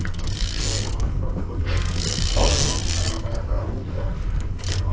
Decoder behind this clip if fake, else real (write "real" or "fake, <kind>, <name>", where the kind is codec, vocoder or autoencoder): fake, codec, SNAC